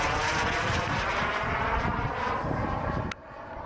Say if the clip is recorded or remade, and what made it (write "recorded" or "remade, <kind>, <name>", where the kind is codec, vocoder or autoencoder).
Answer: recorded